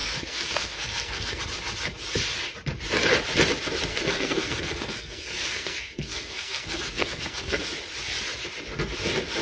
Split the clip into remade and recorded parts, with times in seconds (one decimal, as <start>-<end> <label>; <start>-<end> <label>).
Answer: 0.0-1.4 remade; 1.4-3.9 recorded; 3.9-7.6 remade; 7.6-9.4 recorded